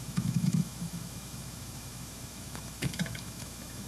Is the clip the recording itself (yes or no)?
no